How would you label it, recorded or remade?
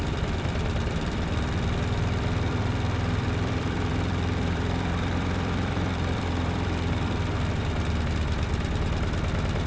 remade